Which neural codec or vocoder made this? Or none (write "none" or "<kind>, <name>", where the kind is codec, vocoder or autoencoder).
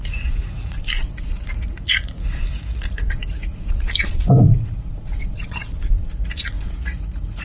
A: vocoder, Vocos